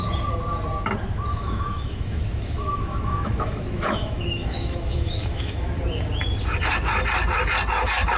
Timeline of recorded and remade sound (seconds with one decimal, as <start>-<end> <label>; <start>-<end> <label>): 0.0-1.3 recorded; 1.3-5.7 remade; 5.7-8.2 recorded